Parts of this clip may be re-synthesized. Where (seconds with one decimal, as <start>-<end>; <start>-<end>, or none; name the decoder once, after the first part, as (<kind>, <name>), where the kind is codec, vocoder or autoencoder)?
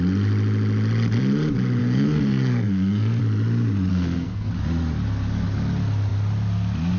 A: 1.8-3.2 (codec, SNAC); 3.9-4.5